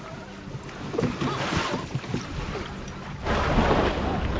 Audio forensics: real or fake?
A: real